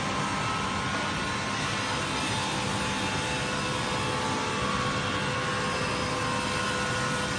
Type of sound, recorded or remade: recorded